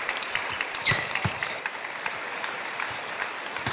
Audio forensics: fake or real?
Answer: fake